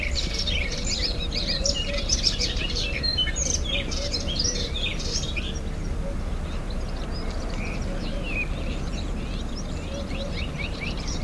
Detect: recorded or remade remade